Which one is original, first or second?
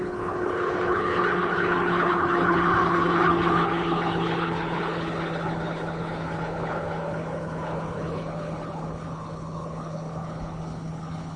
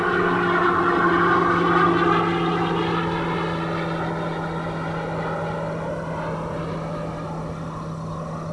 second